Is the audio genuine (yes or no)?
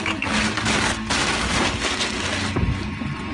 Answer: yes